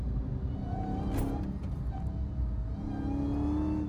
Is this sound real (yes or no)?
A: yes